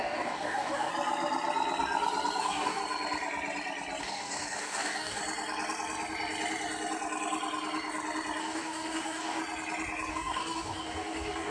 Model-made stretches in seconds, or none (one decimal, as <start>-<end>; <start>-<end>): 0.0-0.9; 2.4-2.8; 4.0-5.2; 8.4-9.4; 10.1-11.5